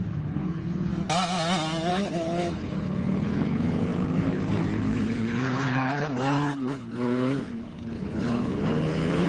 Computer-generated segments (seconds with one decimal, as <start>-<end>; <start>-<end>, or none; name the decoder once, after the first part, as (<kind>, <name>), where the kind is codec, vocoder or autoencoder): 0.0-0.9 (codec, HILCodec); 1.9-9.3